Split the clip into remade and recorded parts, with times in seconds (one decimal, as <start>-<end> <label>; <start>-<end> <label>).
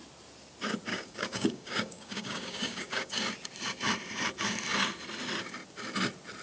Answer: 0.0-0.9 recorded; 0.9-3.2 remade; 3.2-6.4 recorded